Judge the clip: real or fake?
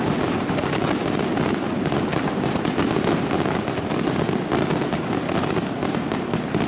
real